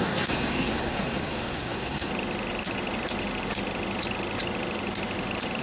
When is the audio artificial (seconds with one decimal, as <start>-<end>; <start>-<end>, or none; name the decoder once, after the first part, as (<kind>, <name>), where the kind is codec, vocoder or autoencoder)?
0.0-2.1 (codec, SNAC)